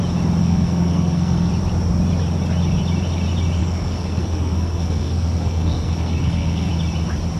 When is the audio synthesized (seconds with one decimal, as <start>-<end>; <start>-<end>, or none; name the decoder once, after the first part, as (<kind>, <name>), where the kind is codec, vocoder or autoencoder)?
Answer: 0.4-1.5 (codec, SNAC); 3.6-6.7